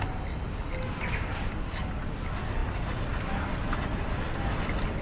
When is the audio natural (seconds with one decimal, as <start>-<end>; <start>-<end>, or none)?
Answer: 0.0-5.0